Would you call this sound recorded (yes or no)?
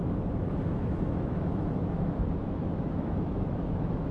no